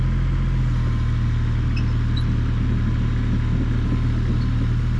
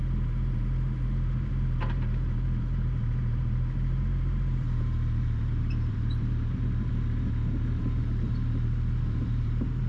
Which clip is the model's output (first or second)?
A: second